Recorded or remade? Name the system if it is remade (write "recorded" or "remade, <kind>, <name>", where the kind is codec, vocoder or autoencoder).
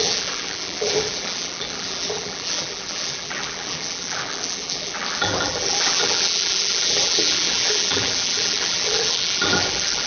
remade, vocoder, BigVGAN v2